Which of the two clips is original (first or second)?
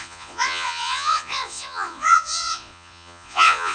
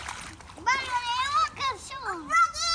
second